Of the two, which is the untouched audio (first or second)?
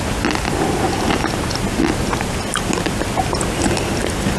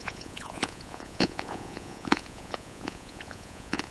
first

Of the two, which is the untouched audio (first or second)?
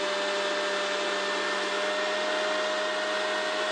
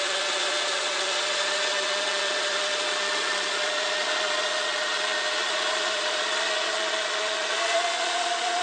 first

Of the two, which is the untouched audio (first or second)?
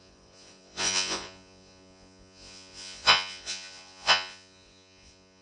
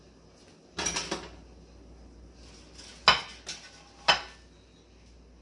second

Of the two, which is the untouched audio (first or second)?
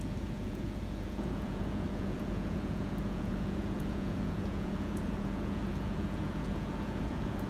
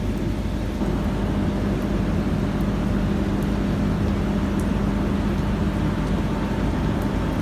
second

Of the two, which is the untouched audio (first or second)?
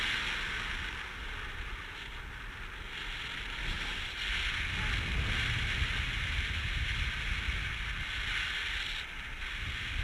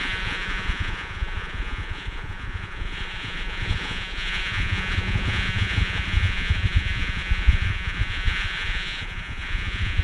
first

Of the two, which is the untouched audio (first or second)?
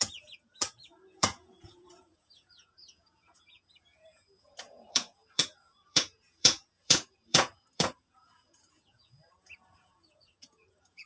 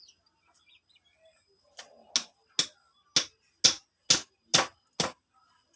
second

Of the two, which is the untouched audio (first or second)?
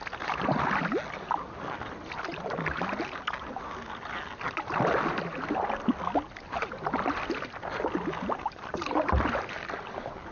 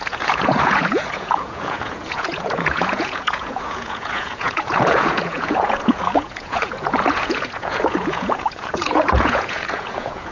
first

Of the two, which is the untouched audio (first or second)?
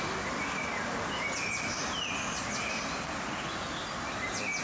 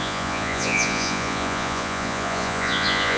first